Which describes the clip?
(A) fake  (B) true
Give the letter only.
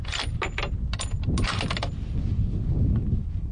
B